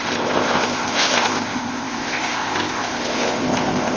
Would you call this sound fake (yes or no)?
yes